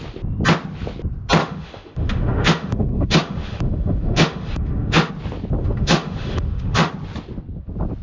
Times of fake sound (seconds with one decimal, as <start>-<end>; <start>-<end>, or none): 1.4-5.1; 5.6-6.9